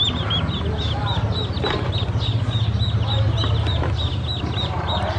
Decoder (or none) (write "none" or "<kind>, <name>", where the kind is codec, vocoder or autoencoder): none